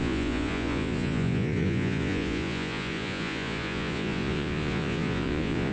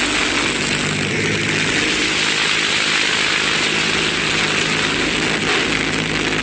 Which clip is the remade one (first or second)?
first